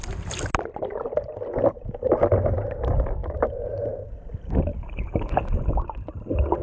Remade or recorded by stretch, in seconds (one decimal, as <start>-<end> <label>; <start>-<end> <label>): 0.0-3.2 recorded; 3.2-3.9 remade; 3.9-6.6 recorded